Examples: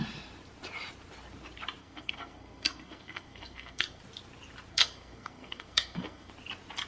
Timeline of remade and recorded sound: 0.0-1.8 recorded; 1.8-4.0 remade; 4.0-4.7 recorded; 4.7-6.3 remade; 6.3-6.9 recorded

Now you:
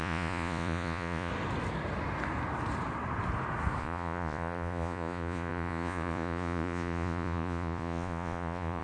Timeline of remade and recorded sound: 0.0-1.3 remade; 1.3-3.8 recorded; 3.8-8.8 remade

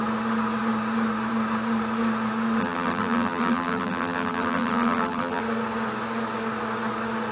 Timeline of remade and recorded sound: 0.0-2.6 recorded; 2.6-5.4 remade; 5.4-7.3 recorded

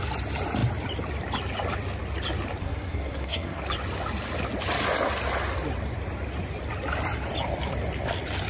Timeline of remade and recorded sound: 0.0-2.6 recorded; 2.6-3.6 remade; 3.6-8.5 recorded